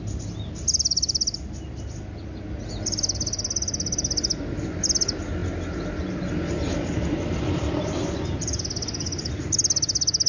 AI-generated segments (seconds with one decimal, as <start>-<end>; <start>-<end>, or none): none